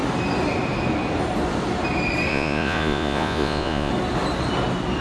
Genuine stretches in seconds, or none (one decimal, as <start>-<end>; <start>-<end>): 0.0-2.3; 3.9-5.0